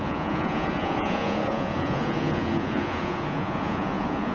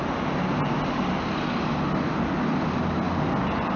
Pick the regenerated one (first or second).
first